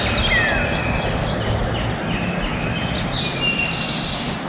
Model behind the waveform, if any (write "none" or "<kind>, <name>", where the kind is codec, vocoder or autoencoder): none